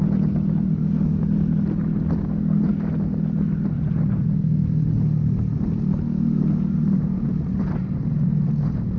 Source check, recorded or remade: recorded